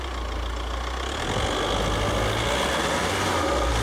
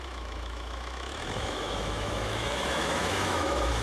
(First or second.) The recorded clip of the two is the first